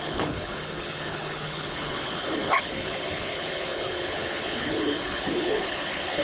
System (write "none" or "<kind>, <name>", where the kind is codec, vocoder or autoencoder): codec, HILCodec